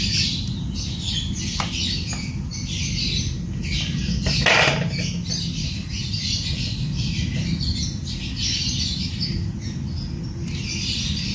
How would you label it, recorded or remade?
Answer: recorded